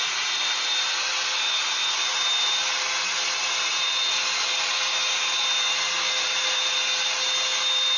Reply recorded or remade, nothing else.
recorded